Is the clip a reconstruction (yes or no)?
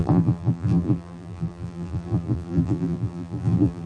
yes